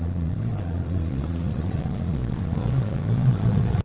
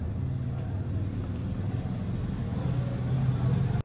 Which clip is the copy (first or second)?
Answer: first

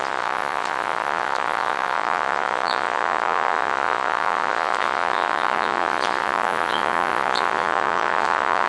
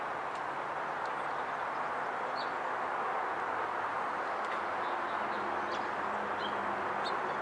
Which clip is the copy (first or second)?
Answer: first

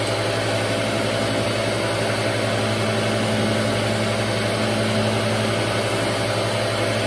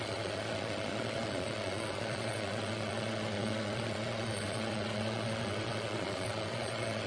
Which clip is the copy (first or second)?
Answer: second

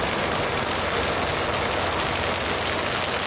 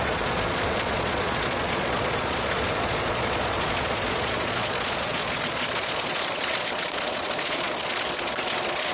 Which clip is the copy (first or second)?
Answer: second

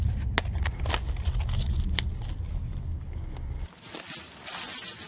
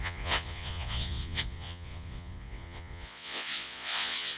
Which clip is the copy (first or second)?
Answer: second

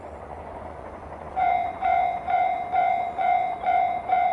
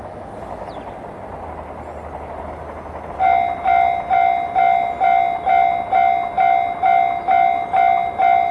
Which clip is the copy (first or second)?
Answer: first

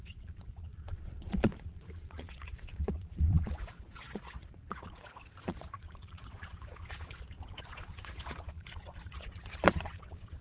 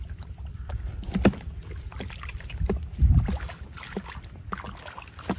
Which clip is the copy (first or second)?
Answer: first